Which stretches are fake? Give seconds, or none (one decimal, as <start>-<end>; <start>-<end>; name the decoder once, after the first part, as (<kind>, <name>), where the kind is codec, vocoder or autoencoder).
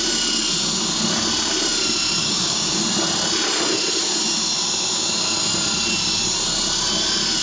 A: 2.2-2.8 (codec, DAC)